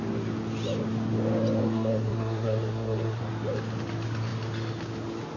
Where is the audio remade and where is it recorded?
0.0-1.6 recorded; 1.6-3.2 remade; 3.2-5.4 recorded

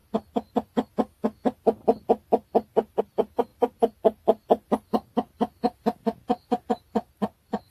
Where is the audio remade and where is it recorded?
0.0-3.0 recorded; 3.0-3.5 remade; 3.5-6.7 recorded; 6.7-7.7 remade

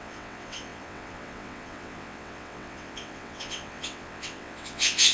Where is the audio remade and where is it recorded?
0.0-5.1 remade